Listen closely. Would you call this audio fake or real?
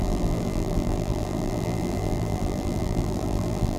fake